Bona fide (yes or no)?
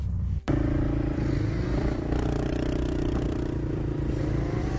no